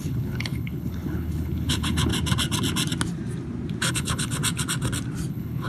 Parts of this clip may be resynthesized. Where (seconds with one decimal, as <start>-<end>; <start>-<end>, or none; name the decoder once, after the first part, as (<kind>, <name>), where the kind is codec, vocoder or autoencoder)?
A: 0.0-2.1 (codec, HILCodec); 3.9-4.4; 5.3-5.7